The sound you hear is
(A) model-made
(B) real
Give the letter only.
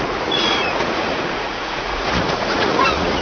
A